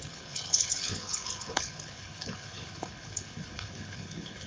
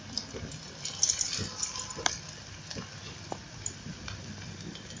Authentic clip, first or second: second